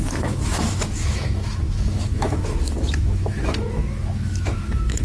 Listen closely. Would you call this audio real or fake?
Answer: fake